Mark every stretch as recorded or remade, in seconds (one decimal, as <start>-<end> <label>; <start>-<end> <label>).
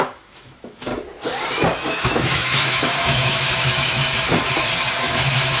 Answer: 0.0-0.9 remade; 0.9-1.9 recorded; 1.9-4.0 remade; 4.0-5.0 recorded; 5.0-5.6 remade